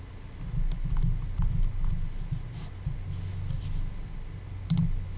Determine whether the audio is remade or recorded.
recorded